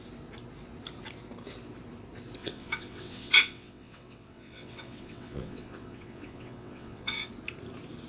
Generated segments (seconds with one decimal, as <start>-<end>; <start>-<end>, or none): 2.4-7.3